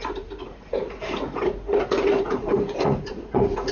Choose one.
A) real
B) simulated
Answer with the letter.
B